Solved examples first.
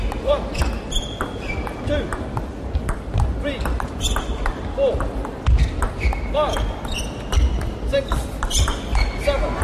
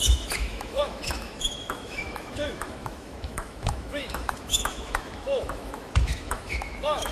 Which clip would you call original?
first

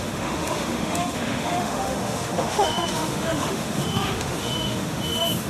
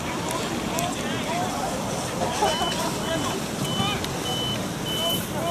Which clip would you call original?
second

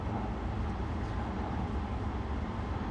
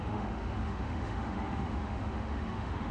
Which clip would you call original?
first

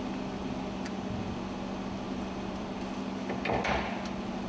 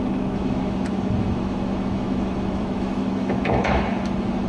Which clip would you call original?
first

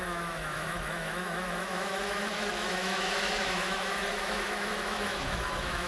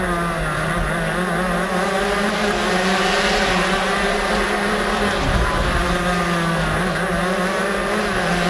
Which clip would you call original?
second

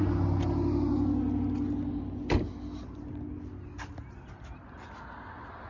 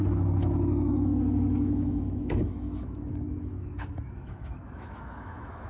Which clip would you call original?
first